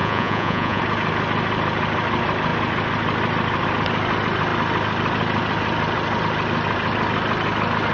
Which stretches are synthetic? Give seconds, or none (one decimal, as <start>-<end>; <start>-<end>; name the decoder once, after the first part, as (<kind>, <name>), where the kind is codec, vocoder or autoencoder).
0.0-0.8 (vocoder, Vocos)